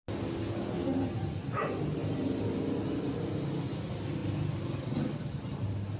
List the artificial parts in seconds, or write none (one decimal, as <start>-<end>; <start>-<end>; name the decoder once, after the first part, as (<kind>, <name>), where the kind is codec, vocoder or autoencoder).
none